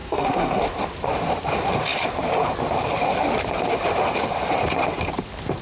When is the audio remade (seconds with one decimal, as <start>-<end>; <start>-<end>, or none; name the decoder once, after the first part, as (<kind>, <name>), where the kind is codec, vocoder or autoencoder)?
0.0-0.6 (codec, SNAC)